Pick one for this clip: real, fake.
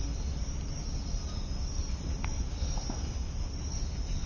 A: real